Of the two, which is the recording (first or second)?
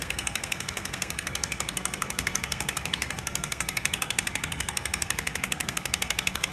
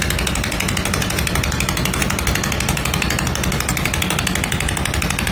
second